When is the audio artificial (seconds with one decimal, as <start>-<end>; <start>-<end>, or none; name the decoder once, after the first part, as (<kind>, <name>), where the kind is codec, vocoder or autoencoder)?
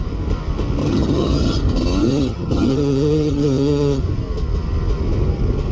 0.8-1.6 (vocoder, HiFi-GAN); 2.0-4.0